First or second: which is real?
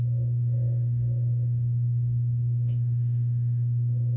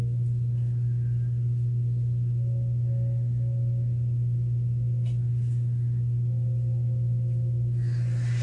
second